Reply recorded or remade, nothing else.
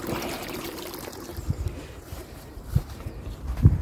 remade